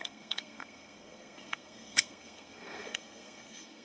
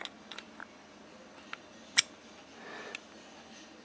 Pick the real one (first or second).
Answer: second